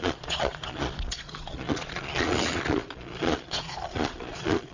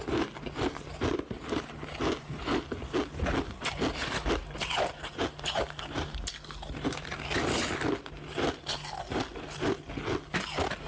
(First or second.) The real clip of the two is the second